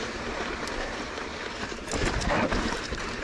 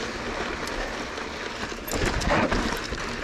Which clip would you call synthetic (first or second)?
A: first